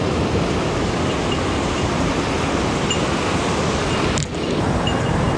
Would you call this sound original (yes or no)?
yes